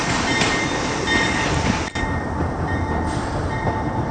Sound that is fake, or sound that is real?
real